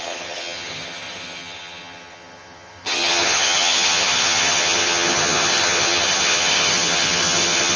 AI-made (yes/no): yes